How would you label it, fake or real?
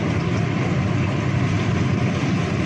real